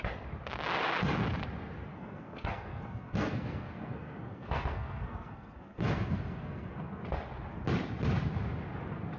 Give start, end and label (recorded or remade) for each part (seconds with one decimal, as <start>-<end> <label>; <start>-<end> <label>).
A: 0.0-1.9 recorded; 1.9-7.0 remade; 7.0-9.2 recorded